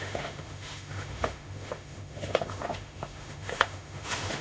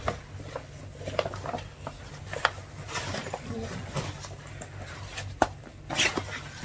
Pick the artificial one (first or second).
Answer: first